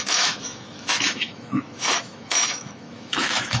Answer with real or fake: fake